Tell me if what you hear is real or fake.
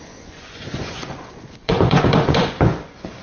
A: fake